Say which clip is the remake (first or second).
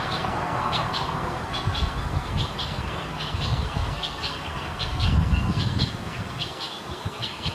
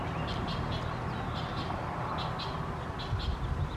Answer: first